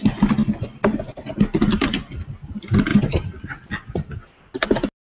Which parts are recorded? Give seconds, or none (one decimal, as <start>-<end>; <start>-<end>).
0.0-5.2